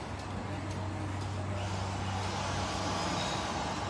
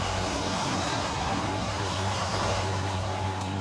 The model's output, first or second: second